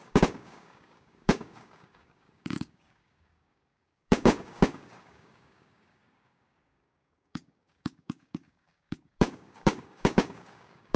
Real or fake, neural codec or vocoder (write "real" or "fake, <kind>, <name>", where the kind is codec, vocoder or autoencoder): fake, codec, DAC